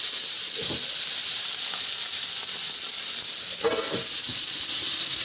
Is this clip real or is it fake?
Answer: real